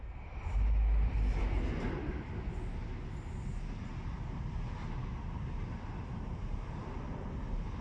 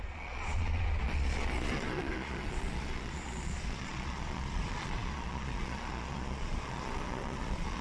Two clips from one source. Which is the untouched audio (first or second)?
first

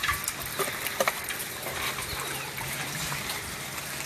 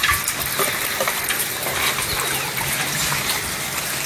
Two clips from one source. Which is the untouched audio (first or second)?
second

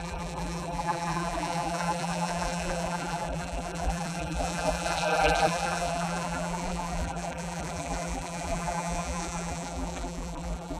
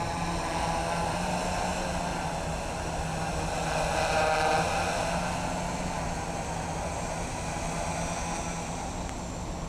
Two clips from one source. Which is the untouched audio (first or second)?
second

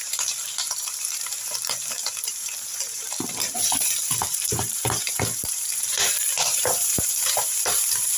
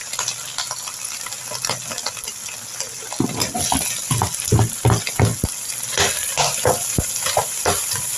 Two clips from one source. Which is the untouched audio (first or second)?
second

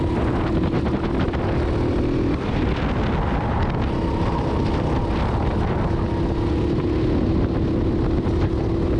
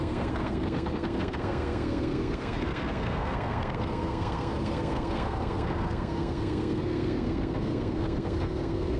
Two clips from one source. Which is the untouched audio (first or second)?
first